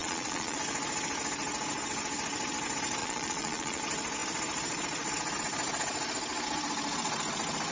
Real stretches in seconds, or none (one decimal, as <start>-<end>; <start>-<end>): 0.6-3.0; 3.8-7.7

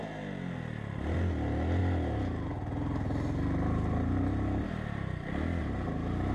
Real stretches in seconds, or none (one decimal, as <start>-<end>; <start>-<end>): 0.0-6.3

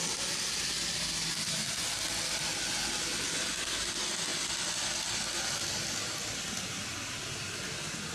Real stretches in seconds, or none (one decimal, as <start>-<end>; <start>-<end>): 0.0-8.1

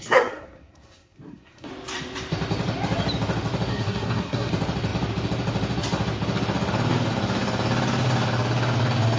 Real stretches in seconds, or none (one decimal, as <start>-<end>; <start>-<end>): 1.7-3.7; 4.5-9.2

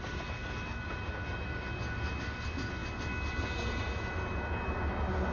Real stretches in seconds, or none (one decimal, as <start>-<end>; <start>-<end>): 0.0-5.3